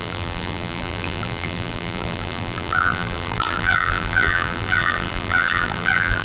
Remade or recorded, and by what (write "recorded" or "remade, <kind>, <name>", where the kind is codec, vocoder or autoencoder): remade, vocoder, BigVGAN v2